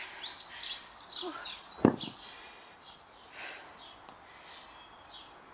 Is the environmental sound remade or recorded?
recorded